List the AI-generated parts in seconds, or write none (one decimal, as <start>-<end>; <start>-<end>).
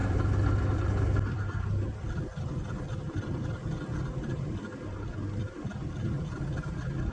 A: 0.0-0.9